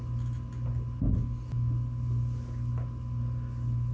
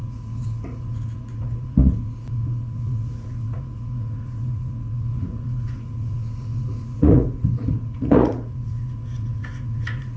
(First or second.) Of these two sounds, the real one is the first